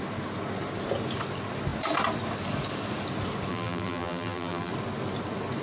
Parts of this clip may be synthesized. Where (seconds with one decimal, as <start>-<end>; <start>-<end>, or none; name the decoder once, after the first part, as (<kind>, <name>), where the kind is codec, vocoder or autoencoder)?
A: 3.5-4.7 (vocoder, BigVGAN v2)